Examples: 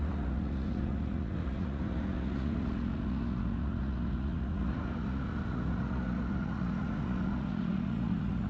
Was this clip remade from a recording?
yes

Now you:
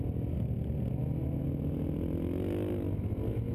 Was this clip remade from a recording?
no